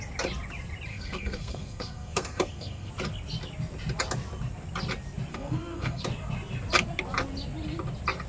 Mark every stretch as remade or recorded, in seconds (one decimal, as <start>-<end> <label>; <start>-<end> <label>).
0.0-0.9 recorded; 0.9-2.9 remade; 2.9-5.3 recorded; 5.3-6.0 remade; 6.0-8.3 recorded